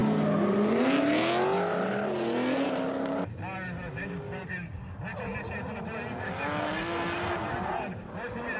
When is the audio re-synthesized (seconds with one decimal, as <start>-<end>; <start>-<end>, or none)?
none